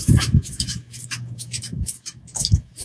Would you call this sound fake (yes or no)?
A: yes